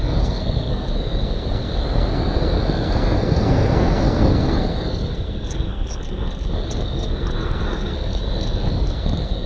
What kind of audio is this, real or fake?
fake